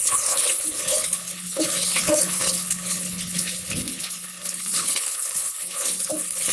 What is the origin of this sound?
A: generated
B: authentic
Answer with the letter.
A